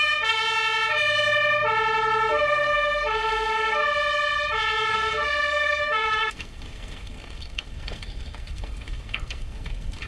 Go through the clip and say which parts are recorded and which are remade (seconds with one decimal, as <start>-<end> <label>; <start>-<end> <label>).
0.0-0.4 remade; 0.4-2.3 recorded; 2.3-3.8 remade; 3.8-4.9 recorded; 4.9-10.1 remade